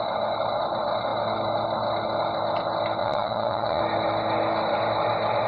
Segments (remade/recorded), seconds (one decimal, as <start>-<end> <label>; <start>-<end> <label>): 0.0-3.0 recorded; 3.0-3.8 remade; 3.8-5.5 recorded